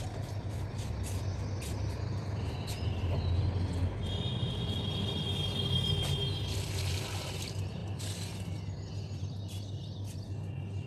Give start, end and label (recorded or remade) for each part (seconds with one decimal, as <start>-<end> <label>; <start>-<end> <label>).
0.0-10.9 recorded